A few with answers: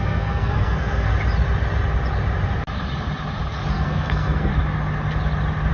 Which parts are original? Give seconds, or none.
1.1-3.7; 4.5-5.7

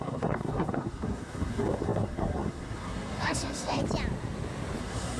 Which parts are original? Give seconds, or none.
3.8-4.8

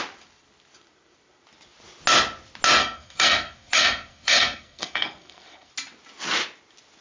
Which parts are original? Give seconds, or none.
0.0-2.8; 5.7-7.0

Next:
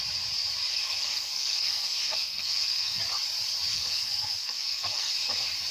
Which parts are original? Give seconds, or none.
0.0-0.7; 3.0-3.7; 5.1-5.7

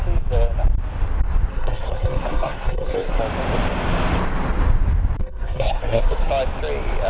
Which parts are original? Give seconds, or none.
0.0-1.5; 3.2-5.2; 6.3-7.1

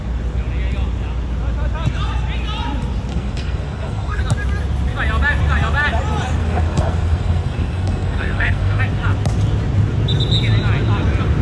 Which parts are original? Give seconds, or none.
0.0-3.1; 4.2-6.4; 8.8-11.4